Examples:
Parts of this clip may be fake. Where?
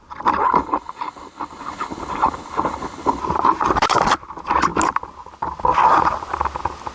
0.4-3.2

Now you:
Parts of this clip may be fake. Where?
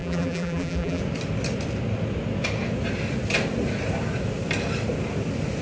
0.0-1.0